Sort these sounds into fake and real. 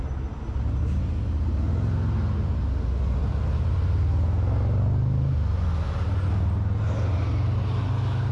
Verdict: real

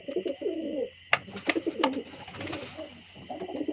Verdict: real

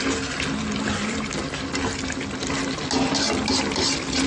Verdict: real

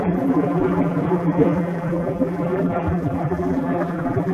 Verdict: fake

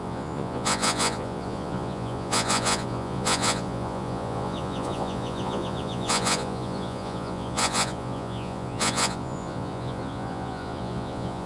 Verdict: fake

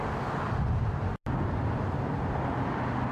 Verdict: real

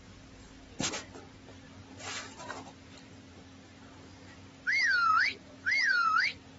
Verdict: real